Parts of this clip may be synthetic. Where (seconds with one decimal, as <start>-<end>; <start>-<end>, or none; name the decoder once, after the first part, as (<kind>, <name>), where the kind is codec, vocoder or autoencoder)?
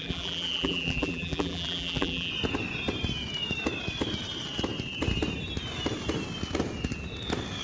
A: 0.0-2.3 (vocoder, BigVGAN v2)